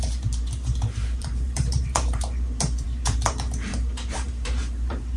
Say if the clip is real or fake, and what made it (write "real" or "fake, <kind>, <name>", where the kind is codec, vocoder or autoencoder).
fake, vocoder, BigVGAN v2